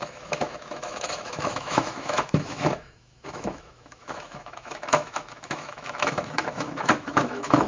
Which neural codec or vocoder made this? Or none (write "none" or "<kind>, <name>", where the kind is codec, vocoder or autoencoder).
autoencoder, DAC-VAE